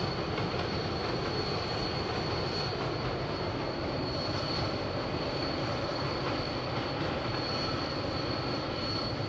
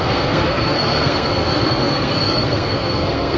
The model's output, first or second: second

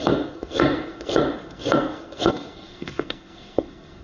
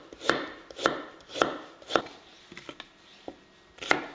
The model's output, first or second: first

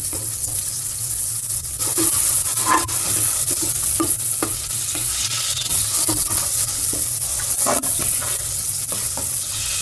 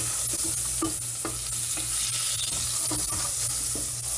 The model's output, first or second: first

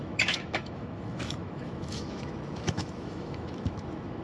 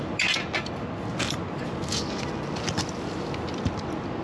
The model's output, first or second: first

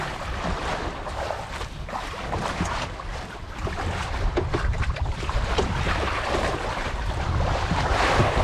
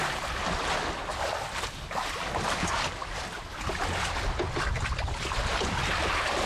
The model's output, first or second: first